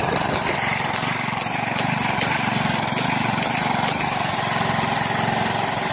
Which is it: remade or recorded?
recorded